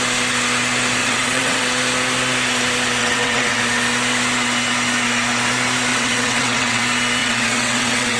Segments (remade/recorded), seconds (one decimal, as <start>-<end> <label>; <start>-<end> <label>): 0.0-1.0 recorded; 1.0-1.6 remade; 1.6-3.0 recorded; 3.0-3.6 remade; 3.6-5.9 recorded; 5.9-6.8 remade; 6.8-7.2 recorded; 7.2-8.2 remade